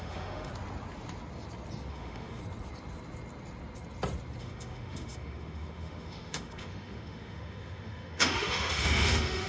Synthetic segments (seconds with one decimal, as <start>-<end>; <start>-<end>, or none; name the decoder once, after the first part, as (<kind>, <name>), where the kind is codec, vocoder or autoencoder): 0.0-0.5 (autoencoder, DAC-VAE); 1.9-2.4; 4.4-9.5